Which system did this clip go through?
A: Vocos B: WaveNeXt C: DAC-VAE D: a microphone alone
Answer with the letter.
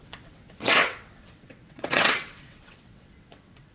B